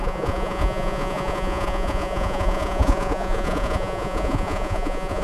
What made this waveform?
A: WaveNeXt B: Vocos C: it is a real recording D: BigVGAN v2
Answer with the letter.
B